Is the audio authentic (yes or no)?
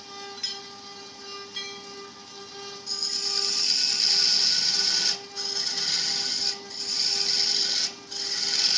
yes